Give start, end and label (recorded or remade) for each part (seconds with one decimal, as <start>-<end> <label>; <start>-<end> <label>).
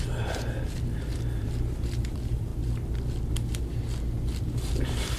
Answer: 0.0-1.1 remade; 1.1-2.1 recorded; 2.1-2.5 remade; 2.5-4.5 recorded; 4.5-5.2 remade